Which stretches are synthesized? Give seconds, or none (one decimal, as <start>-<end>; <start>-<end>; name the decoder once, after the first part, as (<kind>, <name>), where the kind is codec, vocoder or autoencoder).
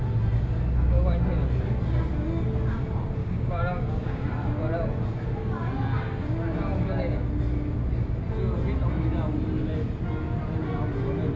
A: 3.2-4.2 (codec, DAC)